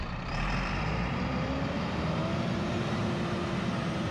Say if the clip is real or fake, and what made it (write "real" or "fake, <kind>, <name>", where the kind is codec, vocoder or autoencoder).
fake, vocoder, BigVGAN v2